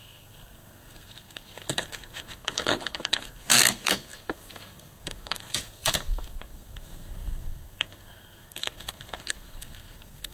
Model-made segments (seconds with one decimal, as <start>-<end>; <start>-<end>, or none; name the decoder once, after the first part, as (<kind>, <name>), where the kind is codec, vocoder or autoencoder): 0.0-10.3 (codec, SNAC)